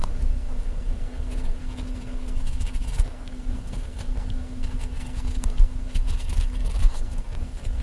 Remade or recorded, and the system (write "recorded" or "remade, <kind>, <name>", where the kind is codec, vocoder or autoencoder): remade, codec, SNAC